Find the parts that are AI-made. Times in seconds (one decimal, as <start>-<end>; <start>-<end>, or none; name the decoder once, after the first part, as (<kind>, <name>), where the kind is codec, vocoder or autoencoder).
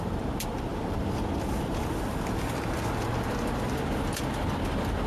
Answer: 0.7-3.8 (vocoder, BigVGAN v2)